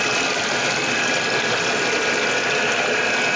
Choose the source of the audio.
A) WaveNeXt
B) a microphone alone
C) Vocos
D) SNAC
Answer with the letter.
B